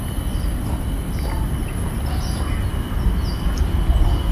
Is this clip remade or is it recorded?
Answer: recorded